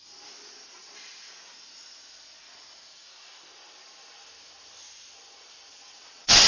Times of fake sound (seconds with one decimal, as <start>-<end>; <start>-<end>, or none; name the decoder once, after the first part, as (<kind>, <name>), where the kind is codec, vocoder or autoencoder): 5.7-6.5 (vocoder, WaveNeXt)